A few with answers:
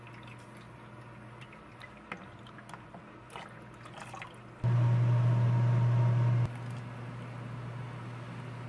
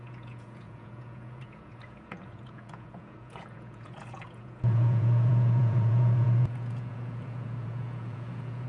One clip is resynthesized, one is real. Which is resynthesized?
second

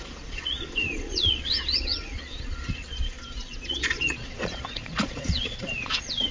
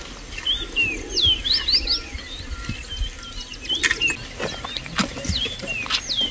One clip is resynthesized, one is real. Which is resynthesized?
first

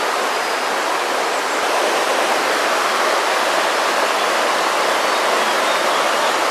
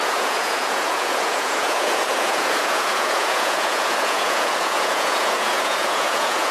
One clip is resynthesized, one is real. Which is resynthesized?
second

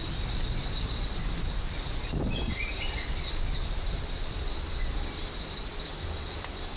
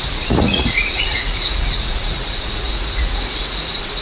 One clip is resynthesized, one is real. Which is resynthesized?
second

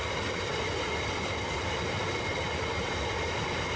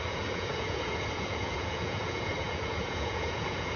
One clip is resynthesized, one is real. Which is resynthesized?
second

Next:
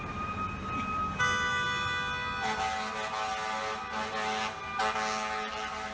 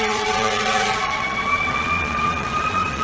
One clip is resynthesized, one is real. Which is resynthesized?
second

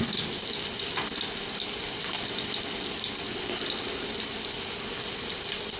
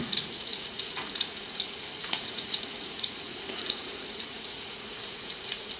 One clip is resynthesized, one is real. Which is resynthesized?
second